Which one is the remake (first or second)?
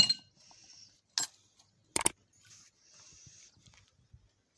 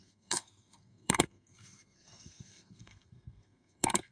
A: second